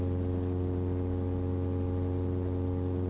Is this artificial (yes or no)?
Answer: no